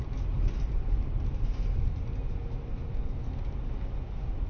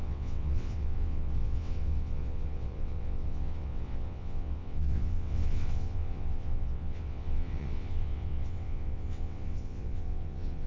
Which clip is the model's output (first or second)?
second